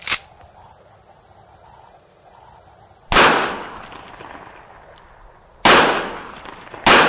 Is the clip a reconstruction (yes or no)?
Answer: no